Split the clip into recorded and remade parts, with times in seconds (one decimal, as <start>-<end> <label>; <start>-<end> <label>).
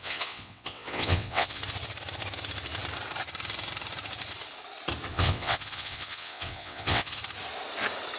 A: 0.0-1.6 remade; 1.6-5.1 recorded; 5.1-7.2 remade; 7.2-8.2 recorded